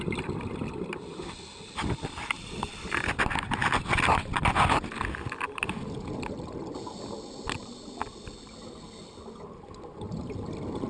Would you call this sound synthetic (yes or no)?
no